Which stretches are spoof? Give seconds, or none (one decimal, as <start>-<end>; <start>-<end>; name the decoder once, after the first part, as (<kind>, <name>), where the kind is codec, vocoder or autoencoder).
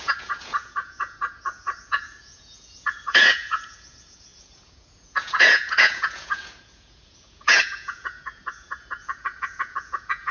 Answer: 0.0-10.3 (vocoder, Vocos)